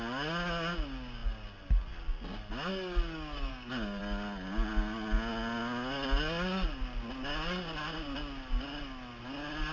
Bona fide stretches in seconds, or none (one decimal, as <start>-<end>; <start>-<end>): 0.0-3.5; 4.0-9.7